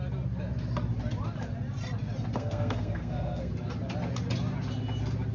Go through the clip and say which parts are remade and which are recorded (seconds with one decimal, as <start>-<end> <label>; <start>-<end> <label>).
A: 0.0-2.3 recorded; 2.3-3.5 remade; 3.5-5.3 recorded